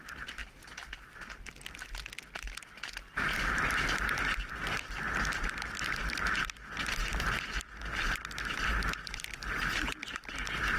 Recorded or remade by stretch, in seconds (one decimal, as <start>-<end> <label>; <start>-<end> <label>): 0.0-10.8 recorded